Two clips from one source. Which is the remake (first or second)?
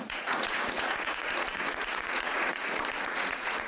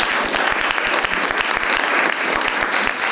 first